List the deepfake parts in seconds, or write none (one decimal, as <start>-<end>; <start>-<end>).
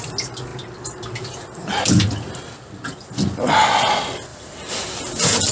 4.3-5.0